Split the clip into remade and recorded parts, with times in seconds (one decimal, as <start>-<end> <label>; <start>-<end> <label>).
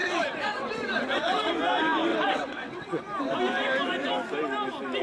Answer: 0.0-1.5 remade; 1.5-2.1 recorded; 2.1-3.0 remade; 3.0-5.0 recorded